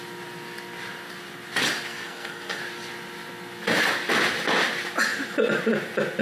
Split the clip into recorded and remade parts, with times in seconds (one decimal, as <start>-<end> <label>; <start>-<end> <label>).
0.0-1.9 recorded; 1.9-2.6 remade; 2.6-6.2 recorded